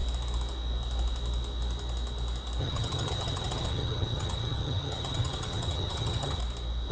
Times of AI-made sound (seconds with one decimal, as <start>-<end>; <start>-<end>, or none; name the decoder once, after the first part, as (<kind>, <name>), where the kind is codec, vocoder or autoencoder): 2.6-6.4 (vocoder, HiFi-GAN)